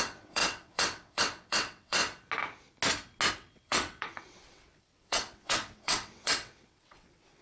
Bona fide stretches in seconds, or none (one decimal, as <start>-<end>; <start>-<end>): 2.0-3.3

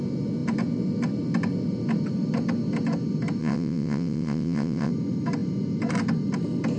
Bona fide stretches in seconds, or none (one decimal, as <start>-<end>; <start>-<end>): 0.0-3.4; 4.9-6.8

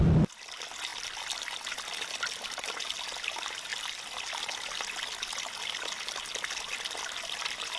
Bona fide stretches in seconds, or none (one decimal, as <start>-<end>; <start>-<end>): 0.0-7.8

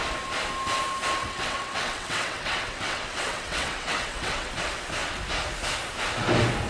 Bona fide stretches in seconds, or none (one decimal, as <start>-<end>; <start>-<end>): 0.0-1.2; 4.5-6.7

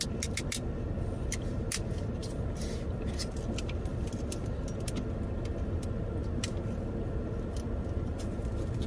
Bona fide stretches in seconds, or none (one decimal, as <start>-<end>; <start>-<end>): 0.0-8.9

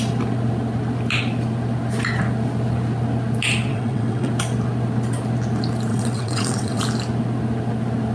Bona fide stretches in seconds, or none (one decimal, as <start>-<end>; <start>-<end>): 0.0-3.7; 4.3-5.9; 6.8-8.1

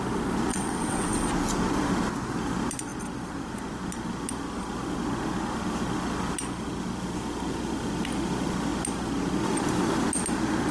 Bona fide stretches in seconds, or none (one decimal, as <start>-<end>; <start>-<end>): 0.0-0.5; 1.3-10.7

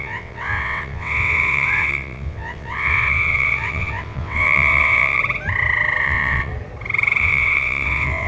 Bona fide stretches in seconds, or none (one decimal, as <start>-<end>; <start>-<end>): 5.2-6.0; 6.5-7.2